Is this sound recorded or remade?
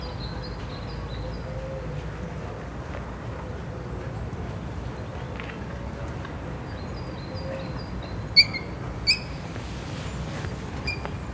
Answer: recorded